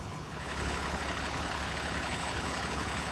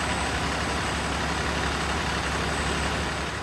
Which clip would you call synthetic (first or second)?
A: first